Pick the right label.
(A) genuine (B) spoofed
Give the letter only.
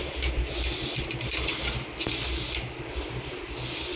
A